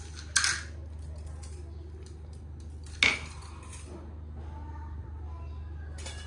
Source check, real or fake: real